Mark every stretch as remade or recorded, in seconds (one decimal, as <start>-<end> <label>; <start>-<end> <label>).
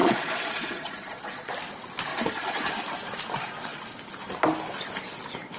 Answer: 0.0-1.5 remade; 1.5-2.1 recorded; 2.1-2.7 remade; 2.7-5.6 recorded